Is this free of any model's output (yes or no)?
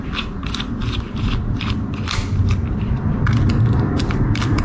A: no